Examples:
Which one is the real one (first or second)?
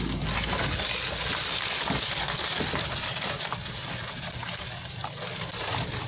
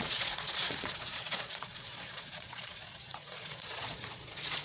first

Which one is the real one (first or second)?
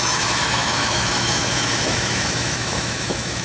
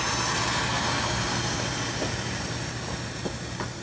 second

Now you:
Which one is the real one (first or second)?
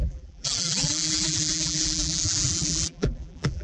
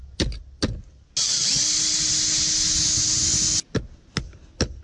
second